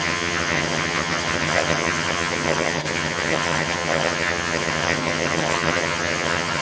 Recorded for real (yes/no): no